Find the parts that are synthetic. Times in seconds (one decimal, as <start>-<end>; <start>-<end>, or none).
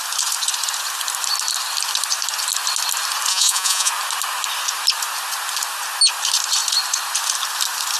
3.3-3.9